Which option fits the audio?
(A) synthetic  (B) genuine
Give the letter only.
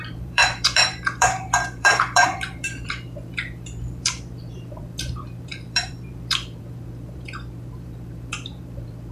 A